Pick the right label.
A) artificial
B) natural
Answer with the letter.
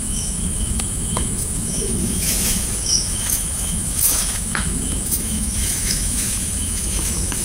A